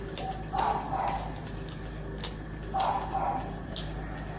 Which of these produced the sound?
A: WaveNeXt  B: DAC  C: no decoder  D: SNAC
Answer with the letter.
C